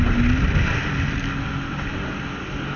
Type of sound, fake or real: real